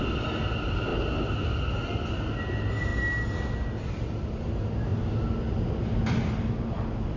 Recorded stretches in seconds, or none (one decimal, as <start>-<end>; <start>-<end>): 0.0-7.2